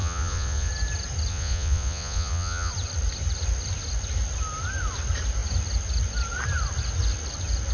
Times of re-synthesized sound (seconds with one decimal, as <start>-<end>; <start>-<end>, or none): 0.0-0.7; 1.3-2.7